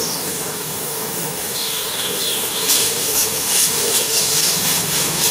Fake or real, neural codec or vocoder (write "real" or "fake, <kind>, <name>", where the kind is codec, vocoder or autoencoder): fake, codec, DAC